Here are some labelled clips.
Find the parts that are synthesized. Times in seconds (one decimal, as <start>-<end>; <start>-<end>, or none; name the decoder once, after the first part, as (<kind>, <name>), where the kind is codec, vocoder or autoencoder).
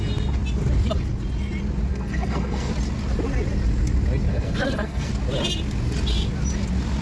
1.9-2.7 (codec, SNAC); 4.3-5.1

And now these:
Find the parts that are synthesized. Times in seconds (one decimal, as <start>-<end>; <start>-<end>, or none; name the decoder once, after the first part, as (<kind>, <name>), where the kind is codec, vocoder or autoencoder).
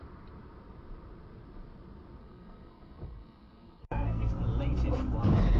2.2-4.3 (codec, SNAC)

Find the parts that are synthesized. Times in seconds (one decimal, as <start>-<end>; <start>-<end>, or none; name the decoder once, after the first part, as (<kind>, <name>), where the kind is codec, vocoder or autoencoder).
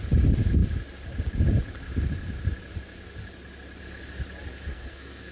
4.7-5.3 (codec, SNAC)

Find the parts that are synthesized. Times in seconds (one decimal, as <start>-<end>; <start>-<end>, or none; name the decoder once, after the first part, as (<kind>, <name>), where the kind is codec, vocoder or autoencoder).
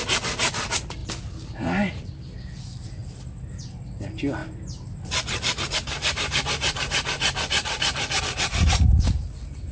4.4-8.2 (vocoder, BigVGAN v2)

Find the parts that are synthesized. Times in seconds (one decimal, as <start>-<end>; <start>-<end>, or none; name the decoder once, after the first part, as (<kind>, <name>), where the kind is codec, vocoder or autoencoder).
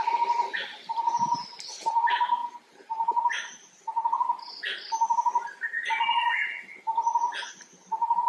2.4-3.8 (vocoder, BigVGAN v2)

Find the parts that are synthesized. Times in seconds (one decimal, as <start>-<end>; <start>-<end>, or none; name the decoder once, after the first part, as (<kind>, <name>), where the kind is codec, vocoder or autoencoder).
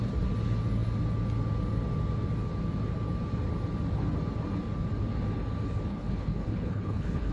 5.9-7.3 (codec, HILCodec)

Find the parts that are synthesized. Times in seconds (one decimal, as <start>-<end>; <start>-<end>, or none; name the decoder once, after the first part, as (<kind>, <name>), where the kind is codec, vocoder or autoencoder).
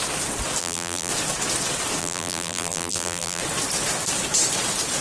0.6-1.1 (vocoder, BigVGAN v2); 2.0-3.4